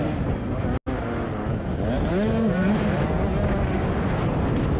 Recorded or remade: recorded